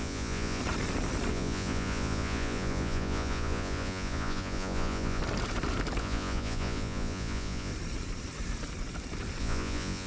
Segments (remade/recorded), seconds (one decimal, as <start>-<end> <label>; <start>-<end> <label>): 0.0-0.6 remade; 0.6-1.3 recorded; 1.3-5.2 remade; 5.2-6.0 recorded; 6.0-7.7 remade; 7.7-9.4 recorded; 9.4-10.1 remade